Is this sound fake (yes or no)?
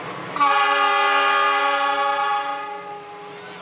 no